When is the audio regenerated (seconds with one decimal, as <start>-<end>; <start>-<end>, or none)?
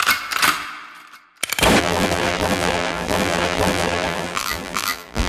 1.8-5.3